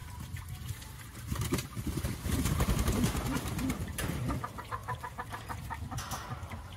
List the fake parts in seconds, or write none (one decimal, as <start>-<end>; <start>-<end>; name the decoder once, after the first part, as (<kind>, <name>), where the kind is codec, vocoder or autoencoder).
0.0-4.0 (vocoder, BigVGAN v2); 4.8-5.3